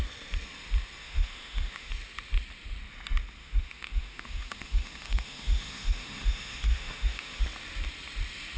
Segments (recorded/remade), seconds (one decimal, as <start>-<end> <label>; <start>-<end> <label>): 0.0-1.0 recorded; 1.0-1.9 remade; 1.9-3.4 recorded; 3.4-7.4 remade; 7.4-8.6 recorded